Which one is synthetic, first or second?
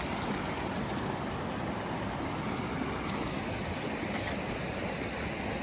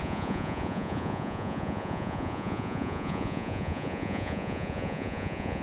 second